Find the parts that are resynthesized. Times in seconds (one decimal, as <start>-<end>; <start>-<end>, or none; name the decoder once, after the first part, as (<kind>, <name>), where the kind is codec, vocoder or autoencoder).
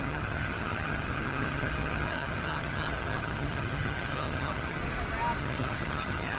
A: 0.0-4.8 (vocoder, HiFi-GAN); 5.4-6.4